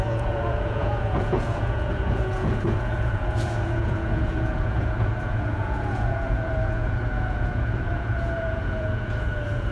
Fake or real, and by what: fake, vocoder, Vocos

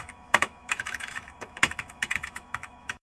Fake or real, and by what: fake, autoencoder, DAC-VAE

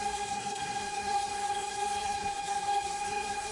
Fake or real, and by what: fake, codec, SNAC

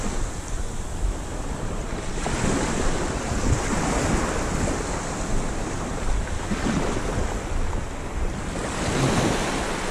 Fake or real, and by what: real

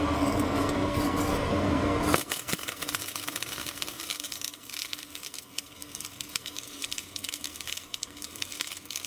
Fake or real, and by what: fake, codec, SNAC